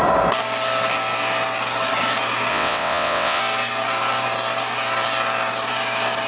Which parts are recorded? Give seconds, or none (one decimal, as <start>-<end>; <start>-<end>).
0.0-2.5; 3.4-6.3

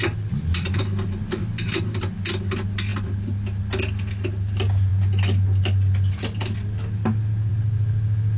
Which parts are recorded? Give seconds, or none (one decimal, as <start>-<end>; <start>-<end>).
0.0-8.4

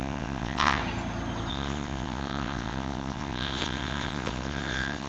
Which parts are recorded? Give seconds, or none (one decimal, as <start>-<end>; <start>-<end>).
0.8-1.5